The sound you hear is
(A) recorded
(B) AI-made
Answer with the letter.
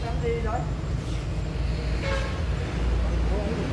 A